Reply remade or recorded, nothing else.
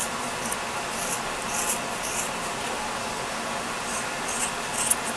recorded